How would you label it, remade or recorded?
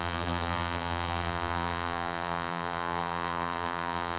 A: remade